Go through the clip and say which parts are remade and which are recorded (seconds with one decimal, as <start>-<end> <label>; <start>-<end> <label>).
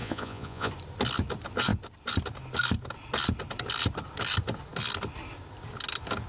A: 0.0-0.7 remade; 0.7-6.3 recorded